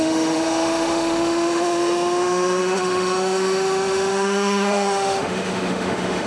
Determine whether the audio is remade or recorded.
remade